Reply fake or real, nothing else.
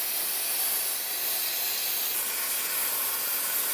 real